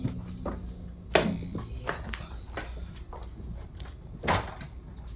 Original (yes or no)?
yes